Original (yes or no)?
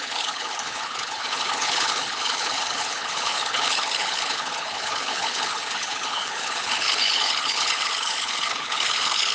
no